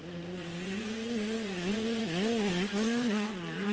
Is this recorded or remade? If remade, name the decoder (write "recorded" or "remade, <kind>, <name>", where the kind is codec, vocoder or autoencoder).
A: remade, vocoder, Vocos